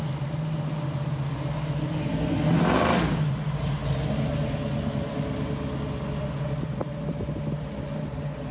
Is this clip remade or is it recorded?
recorded